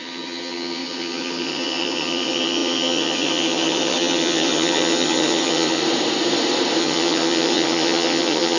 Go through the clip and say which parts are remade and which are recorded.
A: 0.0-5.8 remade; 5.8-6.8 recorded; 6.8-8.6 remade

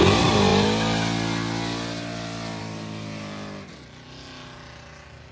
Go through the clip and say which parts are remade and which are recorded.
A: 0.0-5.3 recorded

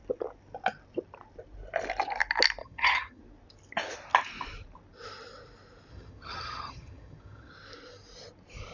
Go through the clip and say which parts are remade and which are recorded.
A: 0.0-2.6 recorded; 2.6-3.2 remade; 3.2-5.9 recorded; 5.9-7.5 remade; 7.5-8.7 recorded

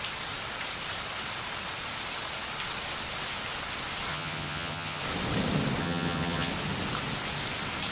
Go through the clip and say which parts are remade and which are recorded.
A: 0.0-4.1 recorded; 4.1-5.0 remade; 5.0-5.8 recorded; 5.8-6.5 remade; 6.5-7.9 recorded

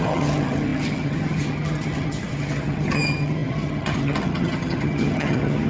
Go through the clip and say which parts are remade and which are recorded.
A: 0.0-5.7 remade

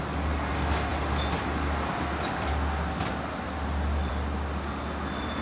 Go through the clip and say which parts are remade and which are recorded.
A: 0.0-5.4 recorded